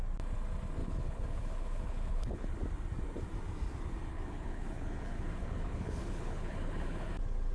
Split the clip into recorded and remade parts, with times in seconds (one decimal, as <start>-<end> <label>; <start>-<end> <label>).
0.0-0.8 recorded; 0.8-2.5 remade; 2.5-4.1 recorded; 4.1-7.1 remade; 7.1-7.5 recorded

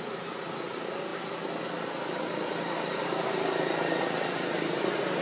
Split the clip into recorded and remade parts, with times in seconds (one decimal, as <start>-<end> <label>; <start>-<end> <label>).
0.0-5.2 recorded

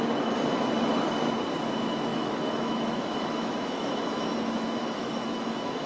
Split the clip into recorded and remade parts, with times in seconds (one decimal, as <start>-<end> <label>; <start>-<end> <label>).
0.0-2.1 recorded; 2.1-5.9 remade

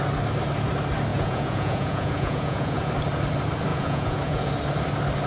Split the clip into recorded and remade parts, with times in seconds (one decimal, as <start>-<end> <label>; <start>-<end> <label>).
0.0-1.1 recorded; 1.1-2.9 remade; 2.9-3.7 recorded; 3.7-4.5 remade; 4.5-5.3 recorded

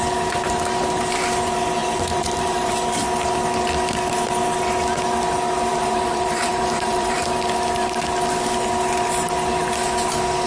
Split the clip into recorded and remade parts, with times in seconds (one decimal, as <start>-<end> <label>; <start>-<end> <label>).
0.0-1.8 recorded; 1.8-2.7 remade; 2.7-5.7 recorded; 5.7-7.2 remade; 7.2-10.5 recorded

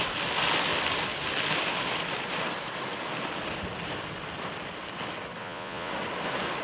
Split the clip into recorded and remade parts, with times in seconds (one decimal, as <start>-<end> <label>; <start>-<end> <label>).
0.0-5.4 recorded; 5.4-5.9 remade; 5.9-6.6 recorded

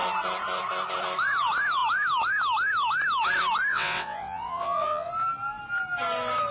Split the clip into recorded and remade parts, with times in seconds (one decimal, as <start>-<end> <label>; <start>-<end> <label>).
0.0-3.7 recorded; 3.7-5.1 remade; 5.1-6.5 recorded